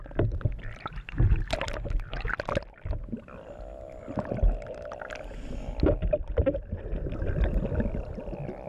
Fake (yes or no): no